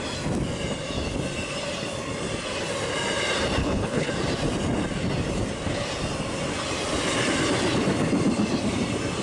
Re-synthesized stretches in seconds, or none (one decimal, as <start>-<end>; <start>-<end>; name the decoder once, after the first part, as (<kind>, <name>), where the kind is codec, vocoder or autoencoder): 3.6-4.1 (codec, HILCodec)